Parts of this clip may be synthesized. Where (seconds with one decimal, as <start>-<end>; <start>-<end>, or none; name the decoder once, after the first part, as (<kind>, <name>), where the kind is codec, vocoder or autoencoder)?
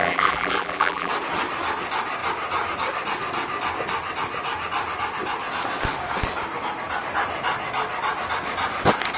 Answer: 0.0-1.1 (vocoder, BigVGAN v2)